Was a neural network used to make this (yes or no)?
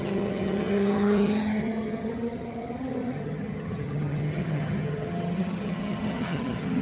yes